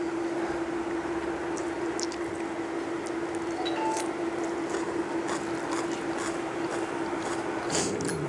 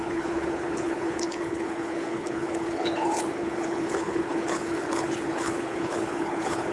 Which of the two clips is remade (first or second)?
second